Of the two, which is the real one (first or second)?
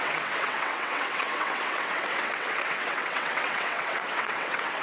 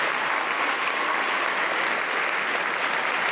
second